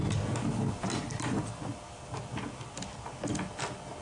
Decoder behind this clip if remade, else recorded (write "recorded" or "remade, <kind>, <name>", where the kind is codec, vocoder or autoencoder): recorded